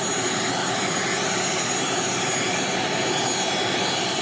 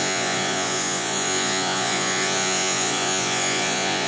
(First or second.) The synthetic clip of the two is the second